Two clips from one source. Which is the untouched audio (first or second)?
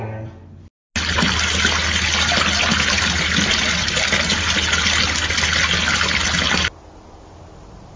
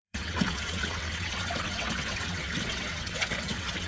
first